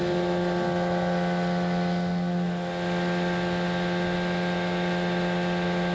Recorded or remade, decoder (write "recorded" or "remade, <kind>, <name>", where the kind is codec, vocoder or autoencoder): recorded